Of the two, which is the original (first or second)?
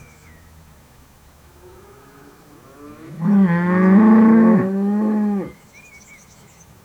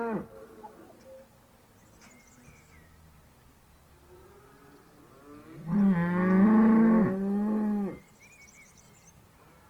second